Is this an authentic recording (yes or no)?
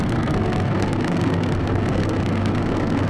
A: no